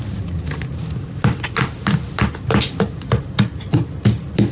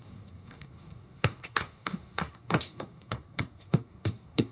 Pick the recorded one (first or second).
first